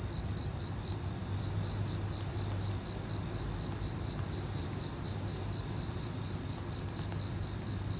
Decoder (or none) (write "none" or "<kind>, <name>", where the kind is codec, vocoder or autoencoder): none